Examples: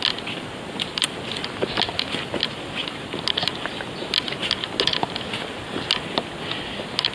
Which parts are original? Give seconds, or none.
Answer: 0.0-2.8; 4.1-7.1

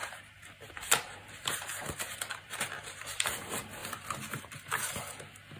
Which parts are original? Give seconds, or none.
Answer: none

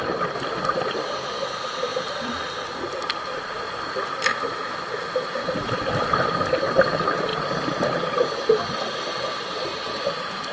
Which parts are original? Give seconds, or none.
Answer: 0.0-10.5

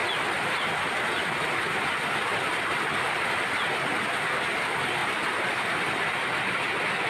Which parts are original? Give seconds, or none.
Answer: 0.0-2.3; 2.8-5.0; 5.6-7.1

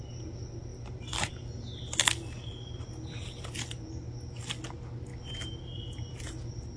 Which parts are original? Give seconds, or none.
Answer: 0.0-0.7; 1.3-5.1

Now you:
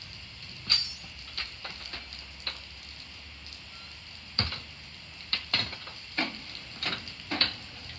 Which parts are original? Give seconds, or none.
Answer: 1.6-4.0

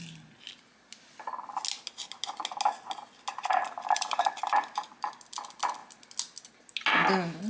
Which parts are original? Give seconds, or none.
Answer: 0.0-3.3; 5.2-7.5